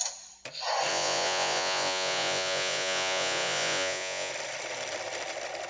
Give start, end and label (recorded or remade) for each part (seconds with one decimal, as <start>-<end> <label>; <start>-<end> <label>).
0.0-0.9 recorded; 0.9-4.3 remade; 4.3-5.7 recorded